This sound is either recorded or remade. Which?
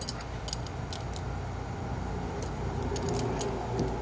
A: recorded